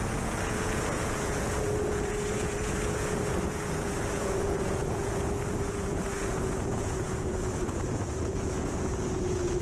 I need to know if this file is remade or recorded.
remade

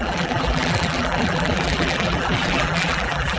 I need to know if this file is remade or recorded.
remade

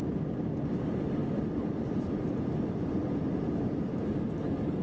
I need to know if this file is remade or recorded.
recorded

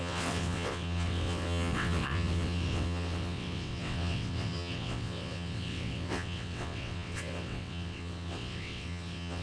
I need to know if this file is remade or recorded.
remade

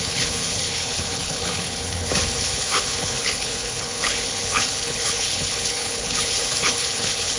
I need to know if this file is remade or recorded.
remade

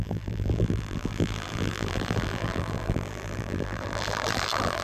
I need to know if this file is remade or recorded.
remade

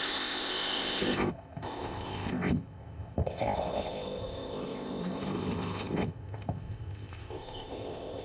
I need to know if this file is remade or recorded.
remade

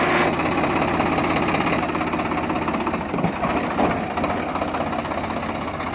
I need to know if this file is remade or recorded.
recorded